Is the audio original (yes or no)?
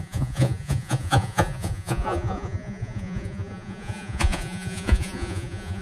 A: no